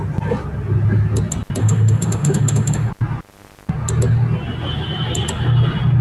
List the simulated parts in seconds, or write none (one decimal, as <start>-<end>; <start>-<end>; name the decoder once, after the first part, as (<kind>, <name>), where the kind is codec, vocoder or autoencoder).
1.6-2.9 (autoencoder, DAC-VAE)